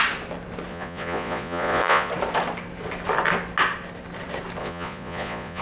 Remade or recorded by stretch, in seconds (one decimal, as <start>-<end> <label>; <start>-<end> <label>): 0.0-0.7 recorded; 0.7-2.1 remade; 2.1-4.6 recorded; 4.6-5.6 remade